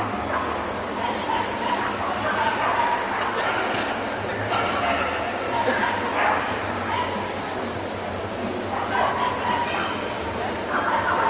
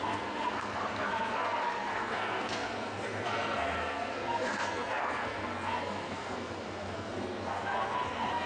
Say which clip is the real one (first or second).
first